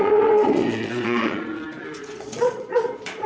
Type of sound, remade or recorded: remade